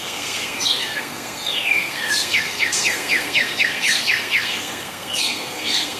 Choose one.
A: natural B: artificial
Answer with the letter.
B